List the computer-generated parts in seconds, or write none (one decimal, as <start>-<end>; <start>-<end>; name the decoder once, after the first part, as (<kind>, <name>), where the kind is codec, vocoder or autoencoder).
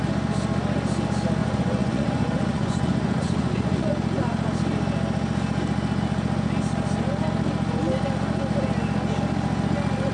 1.4-3.9 (vocoder, Vocos)